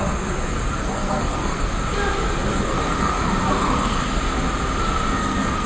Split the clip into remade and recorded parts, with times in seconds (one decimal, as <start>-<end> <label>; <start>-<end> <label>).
0.0-0.8 recorded; 0.8-1.7 remade; 1.7-2.5 recorded; 2.5-3.2 remade; 3.2-3.6 recorded; 3.6-4.2 remade; 4.2-5.2 recorded; 5.2-5.7 remade